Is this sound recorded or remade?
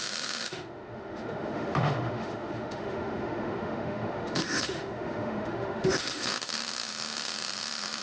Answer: remade